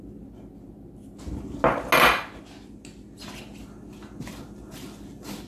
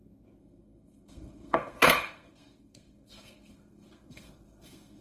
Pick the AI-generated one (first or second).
second